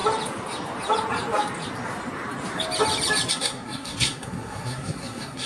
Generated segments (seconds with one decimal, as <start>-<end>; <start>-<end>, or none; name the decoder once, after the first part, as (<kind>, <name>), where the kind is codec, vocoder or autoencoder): 3.3-5.5 (codec, SNAC)